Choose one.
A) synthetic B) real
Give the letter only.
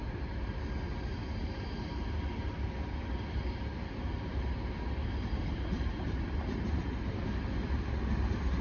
A